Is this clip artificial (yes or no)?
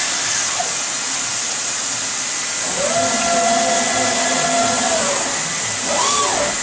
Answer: no